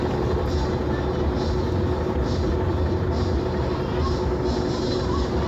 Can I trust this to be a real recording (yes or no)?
yes